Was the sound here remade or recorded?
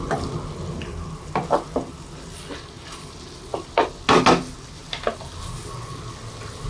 recorded